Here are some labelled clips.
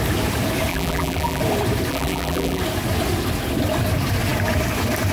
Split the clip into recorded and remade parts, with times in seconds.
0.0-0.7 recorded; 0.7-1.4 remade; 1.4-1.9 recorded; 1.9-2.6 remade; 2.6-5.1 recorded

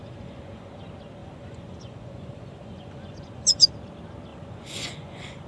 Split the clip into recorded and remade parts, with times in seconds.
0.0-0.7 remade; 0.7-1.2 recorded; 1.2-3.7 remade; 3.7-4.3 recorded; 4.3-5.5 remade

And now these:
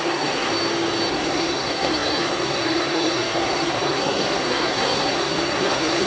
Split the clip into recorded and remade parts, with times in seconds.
0.0-0.5 remade; 0.5-1.1 recorded; 1.1-6.1 remade